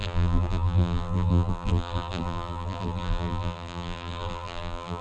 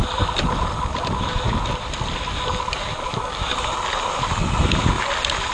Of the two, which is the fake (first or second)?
first